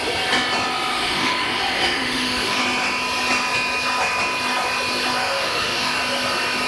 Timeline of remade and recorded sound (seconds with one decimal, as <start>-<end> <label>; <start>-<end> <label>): 0.0-0.9 recorded; 0.9-2.6 remade; 2.6-5.2 recorded; 5.2-6.0 remade; 6.0-6.7 recorded